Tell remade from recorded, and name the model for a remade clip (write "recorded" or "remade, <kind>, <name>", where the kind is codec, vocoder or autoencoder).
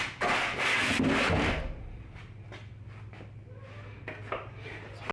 recorded